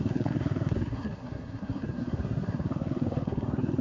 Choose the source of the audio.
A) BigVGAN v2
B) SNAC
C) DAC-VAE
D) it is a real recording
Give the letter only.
B